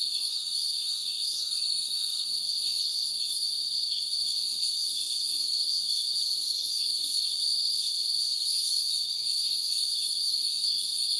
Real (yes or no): no